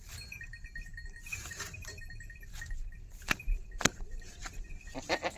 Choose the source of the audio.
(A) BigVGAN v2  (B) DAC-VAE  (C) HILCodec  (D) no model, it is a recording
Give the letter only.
A